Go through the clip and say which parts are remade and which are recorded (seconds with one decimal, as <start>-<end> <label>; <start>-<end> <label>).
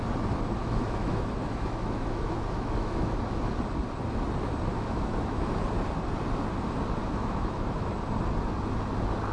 0.0-0.6 recorded; 0.6-3.2 remade; 3.2-4.7 recorded; 4.7-5.4 remade; 5.4-7.0 recorded; 7.0-7.9 remade; 7.9-9.3 recorded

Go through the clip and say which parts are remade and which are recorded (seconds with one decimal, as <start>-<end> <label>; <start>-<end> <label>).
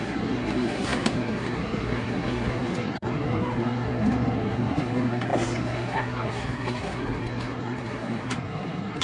0.0-9.0 remade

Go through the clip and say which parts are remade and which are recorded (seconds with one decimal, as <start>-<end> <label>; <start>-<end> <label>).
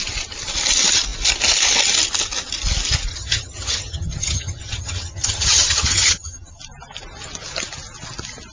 0.0-3.1 recorded; 3.1-6.6 remade; 6.6-8.5 recorded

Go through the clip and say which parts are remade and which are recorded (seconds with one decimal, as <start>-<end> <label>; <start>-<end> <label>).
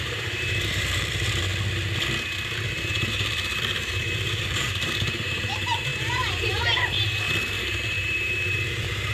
0.0-1.5 remade; 1.5-2.8 recorded; 2.8-9.1 remade